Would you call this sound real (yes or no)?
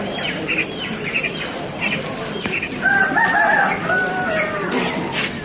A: no